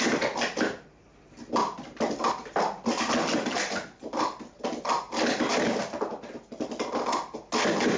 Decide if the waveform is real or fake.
real